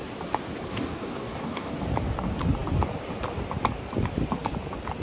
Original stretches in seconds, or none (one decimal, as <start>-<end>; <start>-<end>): 0.0-0.7; 1.7-5.0